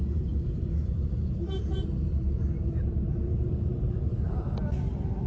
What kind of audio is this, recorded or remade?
remade